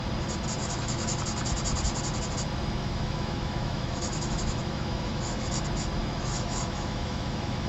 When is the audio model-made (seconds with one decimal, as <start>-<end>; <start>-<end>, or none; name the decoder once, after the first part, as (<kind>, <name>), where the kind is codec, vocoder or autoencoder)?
0.6-1.2 (autoencoder, DAC-VAE); 2.8-5.5; 6.0-7.7